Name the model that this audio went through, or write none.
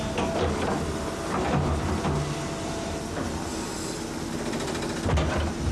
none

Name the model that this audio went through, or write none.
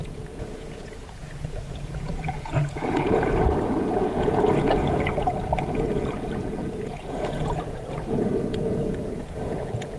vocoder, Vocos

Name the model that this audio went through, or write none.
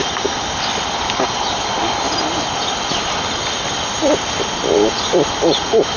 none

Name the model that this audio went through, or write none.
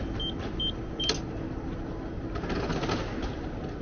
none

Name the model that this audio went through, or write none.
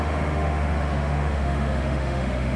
autoencoder, DAC-VAE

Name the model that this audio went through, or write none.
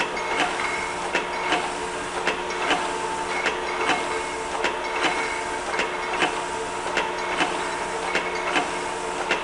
none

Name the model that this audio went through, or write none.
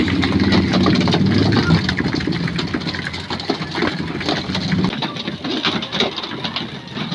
none